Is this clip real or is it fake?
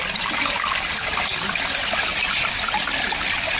real